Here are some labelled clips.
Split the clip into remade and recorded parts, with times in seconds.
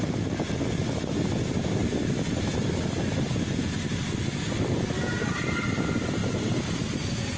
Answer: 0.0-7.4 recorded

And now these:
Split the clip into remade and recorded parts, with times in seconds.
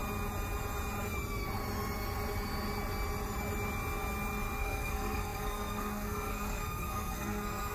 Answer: 0.0-4.6 recorded; 4.6-7.7 remade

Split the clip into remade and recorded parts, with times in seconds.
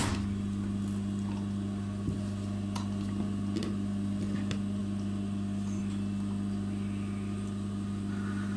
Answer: 0.0-8.6 recorded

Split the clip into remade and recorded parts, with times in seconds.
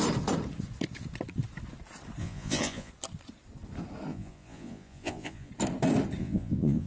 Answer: 0.0-2.2 recorded; 2.2-2.9 remade; 2.9-4.1 recorded; 4.1-5.5 remade; 5.5-6.2 recorded; 6.2-6.9 remade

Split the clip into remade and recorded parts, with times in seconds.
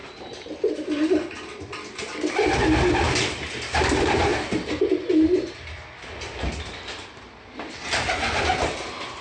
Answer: 0.0-9.2 recorded